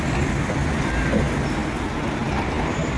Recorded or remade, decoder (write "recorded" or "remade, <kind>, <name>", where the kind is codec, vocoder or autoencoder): recorded